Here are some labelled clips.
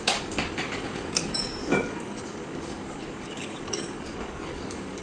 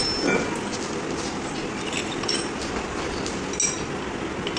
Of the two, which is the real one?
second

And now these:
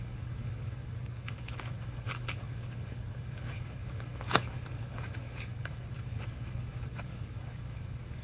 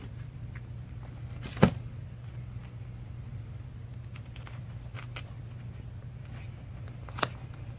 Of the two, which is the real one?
second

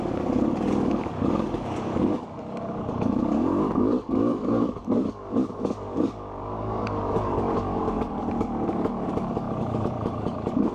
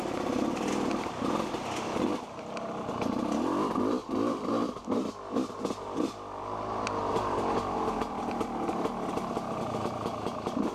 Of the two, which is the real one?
second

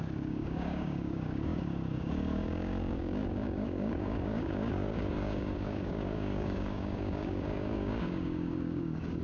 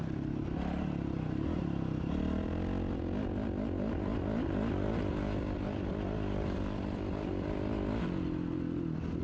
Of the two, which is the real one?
second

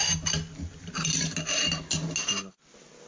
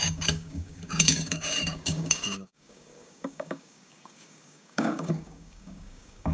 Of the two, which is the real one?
first